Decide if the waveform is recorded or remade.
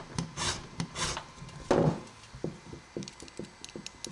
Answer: recorded